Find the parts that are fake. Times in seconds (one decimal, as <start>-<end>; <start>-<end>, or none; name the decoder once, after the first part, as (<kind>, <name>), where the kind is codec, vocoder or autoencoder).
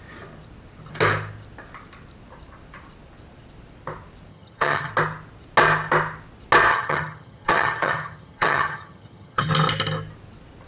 4.3-4.9 (vocoder, HiFi-GAN); 6.7-9.5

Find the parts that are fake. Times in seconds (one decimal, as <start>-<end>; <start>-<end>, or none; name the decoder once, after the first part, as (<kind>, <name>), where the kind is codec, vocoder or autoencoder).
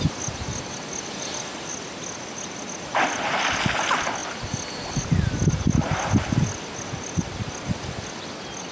none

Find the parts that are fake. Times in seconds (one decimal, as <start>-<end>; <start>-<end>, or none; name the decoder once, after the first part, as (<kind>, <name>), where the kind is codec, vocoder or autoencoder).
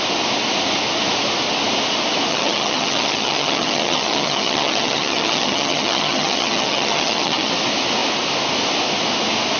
2.3-7.5 (vocoder, HiFi-GAN)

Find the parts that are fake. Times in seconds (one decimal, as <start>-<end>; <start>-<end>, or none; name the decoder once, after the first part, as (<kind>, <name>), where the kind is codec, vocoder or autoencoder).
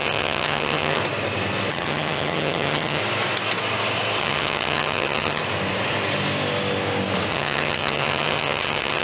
0.0-1.0 (vocoder, HiFi-GAN); 1.7-3.0; 4.2-5.4; 7.3-9.0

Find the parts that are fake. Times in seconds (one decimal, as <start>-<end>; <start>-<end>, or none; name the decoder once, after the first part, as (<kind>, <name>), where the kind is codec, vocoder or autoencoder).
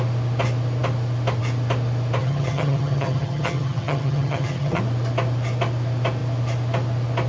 2.2-4.8 (vocoder, HiFi-GAN)